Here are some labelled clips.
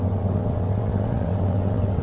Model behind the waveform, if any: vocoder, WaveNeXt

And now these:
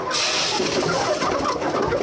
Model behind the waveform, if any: none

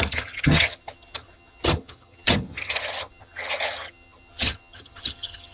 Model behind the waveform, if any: vocoder, HiFi-GAN